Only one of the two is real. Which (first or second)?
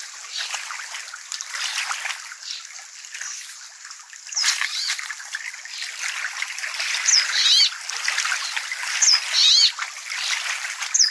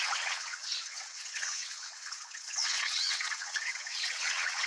first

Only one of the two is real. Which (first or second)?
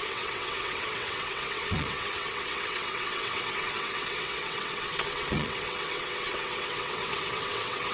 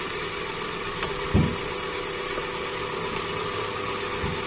second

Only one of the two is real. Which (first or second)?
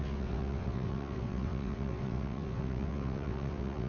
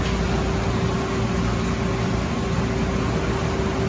second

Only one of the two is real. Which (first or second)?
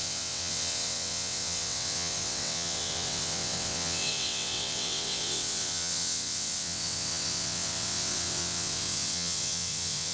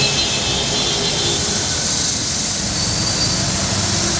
second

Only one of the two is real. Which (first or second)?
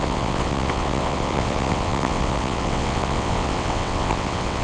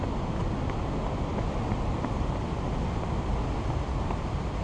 second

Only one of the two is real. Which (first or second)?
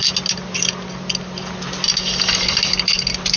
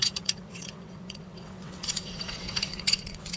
first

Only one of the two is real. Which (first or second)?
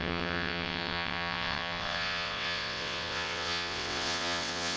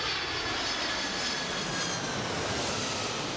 second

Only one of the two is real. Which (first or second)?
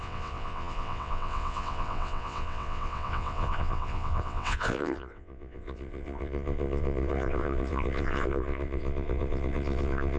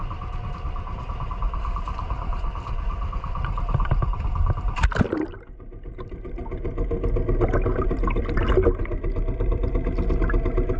second